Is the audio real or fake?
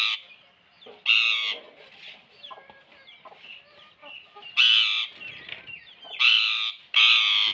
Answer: real